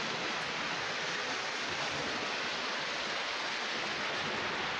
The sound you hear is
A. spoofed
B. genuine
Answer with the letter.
B